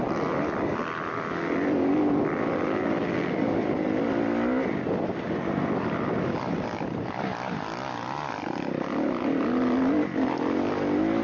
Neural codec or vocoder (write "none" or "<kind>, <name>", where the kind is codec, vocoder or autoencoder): none